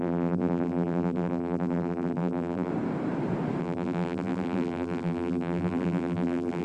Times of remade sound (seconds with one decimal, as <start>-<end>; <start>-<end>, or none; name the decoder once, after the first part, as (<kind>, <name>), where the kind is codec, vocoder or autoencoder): 0.0-2.7 (vocoder, BigVGAN v2); 3.6-6.6